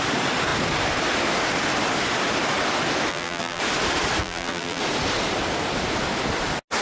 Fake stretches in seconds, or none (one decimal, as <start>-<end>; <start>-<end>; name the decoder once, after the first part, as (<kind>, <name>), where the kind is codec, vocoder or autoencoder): 3.1-3.6 (vocoder, BigVGAN v2); 4.2-4.8